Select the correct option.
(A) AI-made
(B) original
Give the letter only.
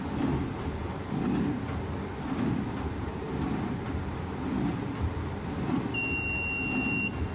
B